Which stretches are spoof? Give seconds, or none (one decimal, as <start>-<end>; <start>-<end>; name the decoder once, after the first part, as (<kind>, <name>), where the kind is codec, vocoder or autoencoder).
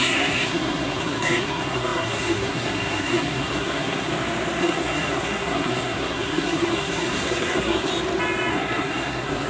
0.0-4.1 (codec, SNAC); 4.6-7.9; 8.5-9.5